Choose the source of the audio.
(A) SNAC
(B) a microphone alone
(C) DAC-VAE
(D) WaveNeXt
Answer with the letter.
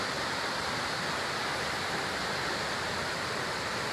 B